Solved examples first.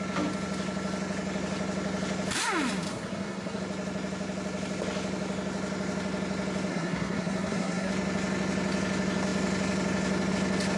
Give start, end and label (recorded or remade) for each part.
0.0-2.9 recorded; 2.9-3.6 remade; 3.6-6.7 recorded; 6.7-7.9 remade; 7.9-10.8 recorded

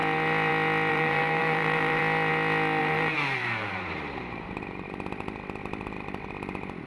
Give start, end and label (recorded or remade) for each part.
0.0-0.9 recorded; 0.9-2.0 remade; 2.0-2.8 recorded; 2.8-4.9 remade; 4.9-6.9 recorded